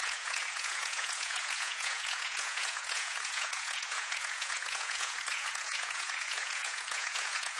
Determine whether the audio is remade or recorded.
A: remade